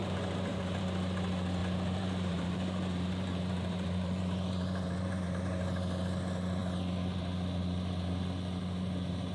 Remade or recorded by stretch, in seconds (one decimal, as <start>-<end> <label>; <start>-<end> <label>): 0.0-0.8 remade; 0.8-1.6 recorded; 1.6-5.4 remade; 5.4-8.6 recorded; 8.6-9.3 remade